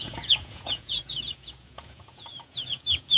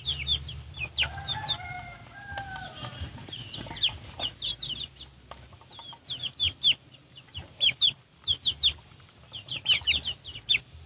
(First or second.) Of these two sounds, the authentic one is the second